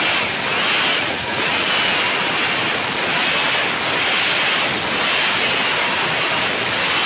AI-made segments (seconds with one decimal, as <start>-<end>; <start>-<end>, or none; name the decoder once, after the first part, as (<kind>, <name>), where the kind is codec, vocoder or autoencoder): 0.9-1.7 (vocoder, Vocos)